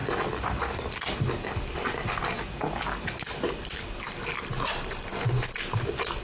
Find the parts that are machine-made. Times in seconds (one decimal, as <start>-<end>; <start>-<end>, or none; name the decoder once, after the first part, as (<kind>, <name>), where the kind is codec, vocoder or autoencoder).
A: none